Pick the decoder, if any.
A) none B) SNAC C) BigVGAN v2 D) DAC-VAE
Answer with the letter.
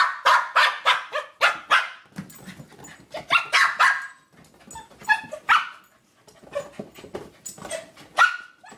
A